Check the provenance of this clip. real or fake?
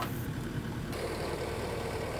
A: fake